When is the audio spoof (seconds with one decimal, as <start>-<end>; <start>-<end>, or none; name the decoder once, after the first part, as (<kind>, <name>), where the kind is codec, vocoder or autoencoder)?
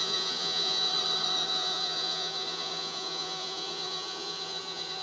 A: 0.0-0.9 (vocoder, Vocos); 1.5-5.0